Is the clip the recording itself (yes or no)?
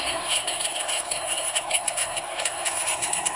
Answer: no